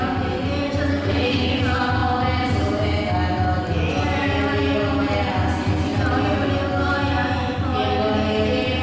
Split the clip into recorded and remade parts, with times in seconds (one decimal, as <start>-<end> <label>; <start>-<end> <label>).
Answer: 0.0-0.9 recorded; 0.9-1.6 remade; 1.6-8.8 recorded